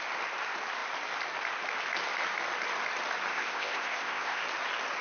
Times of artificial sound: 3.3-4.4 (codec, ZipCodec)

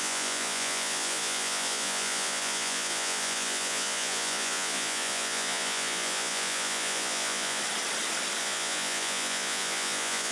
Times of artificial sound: 0.0-7.6 (vocoder, Vocos); 8.4-10.3